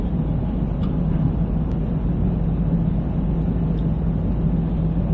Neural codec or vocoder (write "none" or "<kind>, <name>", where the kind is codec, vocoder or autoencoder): none